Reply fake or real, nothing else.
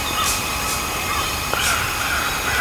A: real